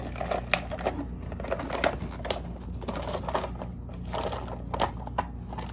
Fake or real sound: real